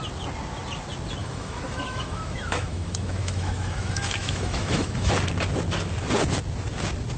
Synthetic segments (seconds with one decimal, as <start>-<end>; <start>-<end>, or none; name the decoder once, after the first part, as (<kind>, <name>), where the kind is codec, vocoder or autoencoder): 1.2-5.1 (autoencoder, DAC-VAE)